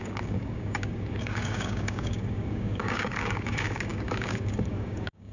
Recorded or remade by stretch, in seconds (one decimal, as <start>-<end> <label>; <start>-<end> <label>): 0.0-5.3 remade